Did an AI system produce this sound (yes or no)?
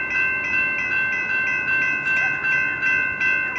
no